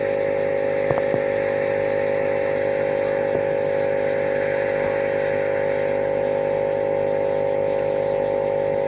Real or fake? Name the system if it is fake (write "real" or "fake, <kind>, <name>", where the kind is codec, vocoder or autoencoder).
real